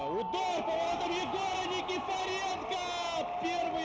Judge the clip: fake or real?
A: real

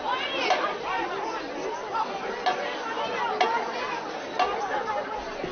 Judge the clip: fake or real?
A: real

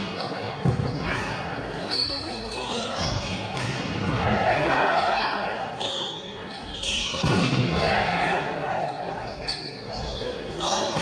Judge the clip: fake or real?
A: fake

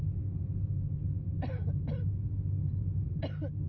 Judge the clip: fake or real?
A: real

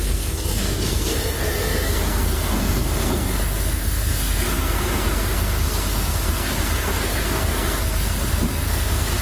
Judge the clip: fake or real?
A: fake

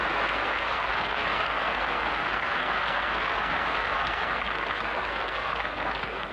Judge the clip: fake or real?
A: fake